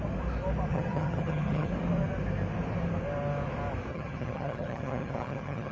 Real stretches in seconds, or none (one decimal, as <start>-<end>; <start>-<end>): 0.0-0.7; 1.7-3.9